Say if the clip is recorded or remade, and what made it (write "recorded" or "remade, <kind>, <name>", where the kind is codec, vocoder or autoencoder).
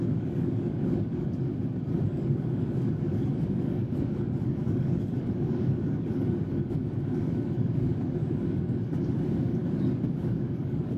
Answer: remade, codec, DAC